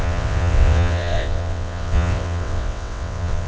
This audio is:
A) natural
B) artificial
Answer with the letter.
B